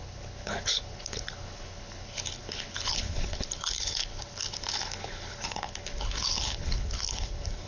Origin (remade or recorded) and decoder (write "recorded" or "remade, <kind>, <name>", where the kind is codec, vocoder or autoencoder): remade, codec, HILCodec